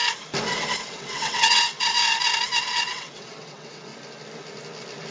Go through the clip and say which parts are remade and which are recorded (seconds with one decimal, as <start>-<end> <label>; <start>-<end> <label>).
0.0-0.8 recorded; 0.8-2.0 remade; 2.0-2.6 recorded; 2.6-3.9 remade; 3.9-5.1 recorded